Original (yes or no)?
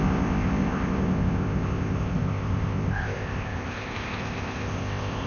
no